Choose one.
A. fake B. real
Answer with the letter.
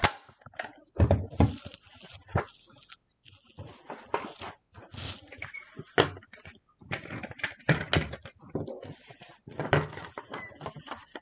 B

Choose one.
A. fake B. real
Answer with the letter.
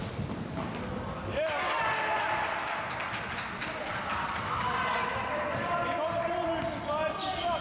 B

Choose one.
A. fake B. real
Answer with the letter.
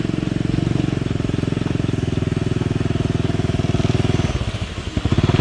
B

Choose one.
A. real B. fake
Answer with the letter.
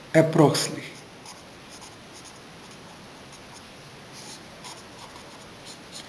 A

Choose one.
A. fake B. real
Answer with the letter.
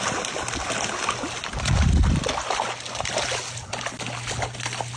B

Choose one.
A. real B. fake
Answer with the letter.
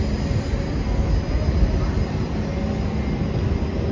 A